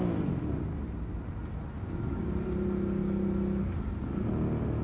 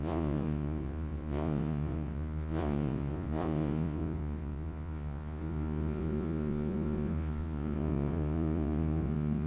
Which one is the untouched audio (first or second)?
first